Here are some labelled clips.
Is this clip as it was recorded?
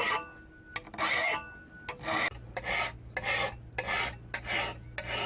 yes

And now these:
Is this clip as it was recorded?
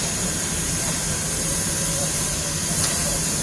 no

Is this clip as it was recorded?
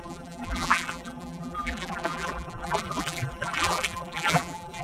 no